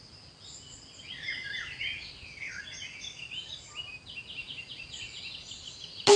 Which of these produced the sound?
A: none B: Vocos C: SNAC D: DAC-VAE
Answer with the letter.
A